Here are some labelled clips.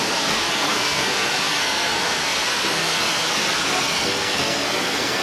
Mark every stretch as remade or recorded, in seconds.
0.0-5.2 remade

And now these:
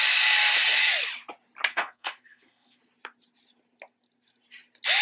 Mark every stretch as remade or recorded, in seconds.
0.0-1.7 recorded; 1.7-2.8 remade; 2.8-5.0 recorded

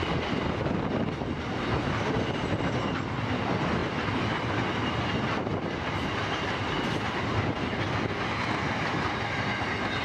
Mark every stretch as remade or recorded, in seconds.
0.0-10.0 recorded